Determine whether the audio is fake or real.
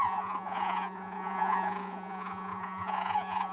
fake